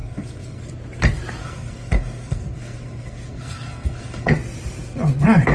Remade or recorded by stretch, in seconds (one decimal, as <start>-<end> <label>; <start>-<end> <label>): 0.0-0.7 remade; 0.7-1.4 recorded; 1.4-4.3 remade; 4.3-5.5 recorded